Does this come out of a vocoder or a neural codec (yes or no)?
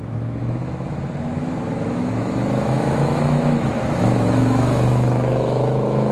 yes